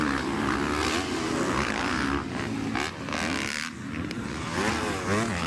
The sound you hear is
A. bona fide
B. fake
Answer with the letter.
A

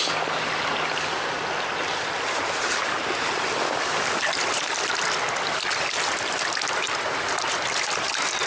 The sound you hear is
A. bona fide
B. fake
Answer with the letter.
A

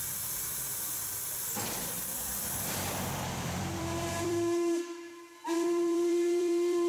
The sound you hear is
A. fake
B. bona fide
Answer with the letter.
A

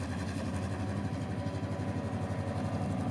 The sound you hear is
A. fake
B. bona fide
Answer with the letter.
B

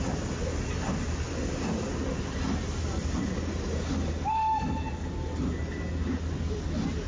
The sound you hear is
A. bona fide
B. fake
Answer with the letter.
A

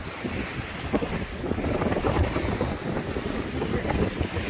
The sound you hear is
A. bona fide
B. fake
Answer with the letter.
B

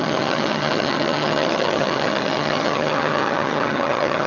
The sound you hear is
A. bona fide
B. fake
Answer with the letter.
B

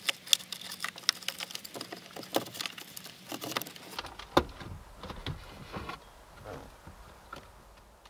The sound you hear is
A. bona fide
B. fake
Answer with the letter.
A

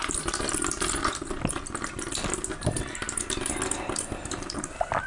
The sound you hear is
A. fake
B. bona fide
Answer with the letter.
B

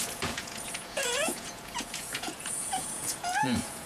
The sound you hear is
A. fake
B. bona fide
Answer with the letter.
A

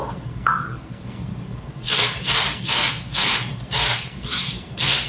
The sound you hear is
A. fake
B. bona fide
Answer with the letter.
A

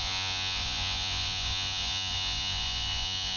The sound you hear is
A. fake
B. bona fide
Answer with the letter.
A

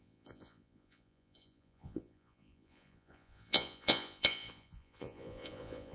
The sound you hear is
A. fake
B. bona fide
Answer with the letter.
A